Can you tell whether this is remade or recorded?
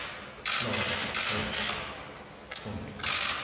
remade